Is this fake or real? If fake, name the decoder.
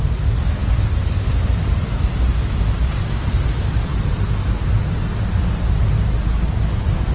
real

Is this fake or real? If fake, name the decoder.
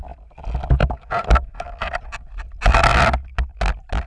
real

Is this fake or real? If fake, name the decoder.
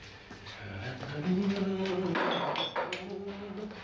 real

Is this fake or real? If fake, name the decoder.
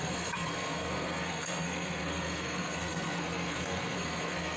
fake, codec, SNAC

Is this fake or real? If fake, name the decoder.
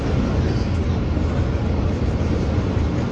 real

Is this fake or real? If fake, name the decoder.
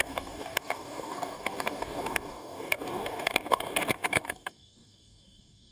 fake, codec, DAC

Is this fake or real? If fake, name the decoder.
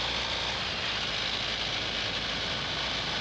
real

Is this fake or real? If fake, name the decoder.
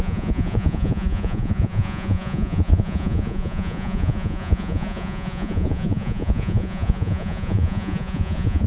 fake, vocoder, Vocos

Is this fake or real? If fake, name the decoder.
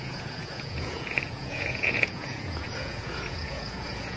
fake, vocoder, Vocos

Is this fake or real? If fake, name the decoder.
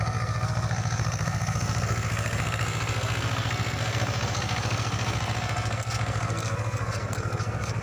fake, codec, SNAC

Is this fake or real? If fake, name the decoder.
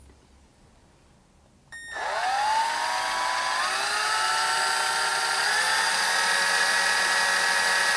real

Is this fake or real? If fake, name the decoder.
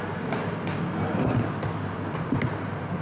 real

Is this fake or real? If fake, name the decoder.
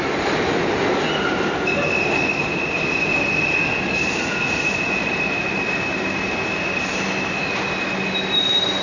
real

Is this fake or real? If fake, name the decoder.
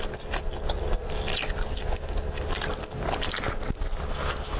real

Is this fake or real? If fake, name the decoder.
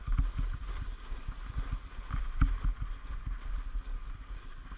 real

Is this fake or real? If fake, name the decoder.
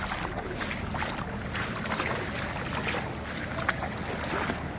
real